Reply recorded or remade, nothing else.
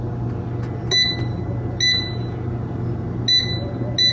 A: recorded